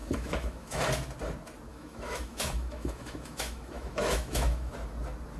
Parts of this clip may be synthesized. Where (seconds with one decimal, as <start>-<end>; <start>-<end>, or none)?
0.0-0.8; 1.7-4.7